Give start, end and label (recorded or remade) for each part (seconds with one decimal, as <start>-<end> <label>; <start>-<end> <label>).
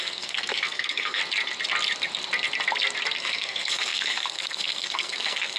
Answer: 0.0-1.2 remade; 1.2-3.2 recorded; 3.2-5.6 remade